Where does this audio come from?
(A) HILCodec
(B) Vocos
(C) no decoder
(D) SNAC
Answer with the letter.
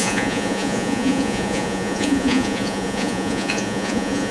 B